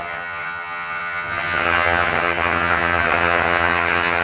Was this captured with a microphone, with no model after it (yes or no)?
no